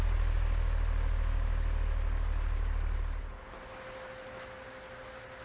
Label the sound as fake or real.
real